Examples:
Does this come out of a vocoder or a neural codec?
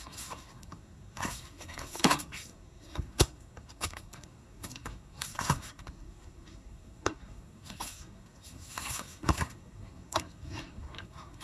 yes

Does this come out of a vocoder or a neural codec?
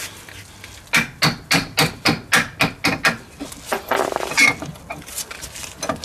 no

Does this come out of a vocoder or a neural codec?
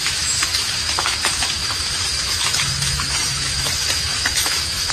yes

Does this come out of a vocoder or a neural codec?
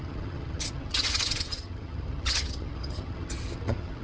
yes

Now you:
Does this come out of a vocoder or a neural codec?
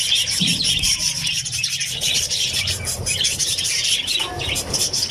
yes